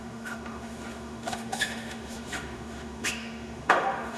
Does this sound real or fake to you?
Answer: fake